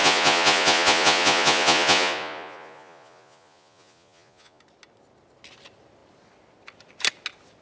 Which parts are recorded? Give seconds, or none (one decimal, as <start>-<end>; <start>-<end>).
4.6-7.6